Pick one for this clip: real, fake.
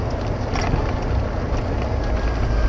real